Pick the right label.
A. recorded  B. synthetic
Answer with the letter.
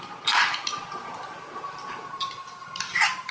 A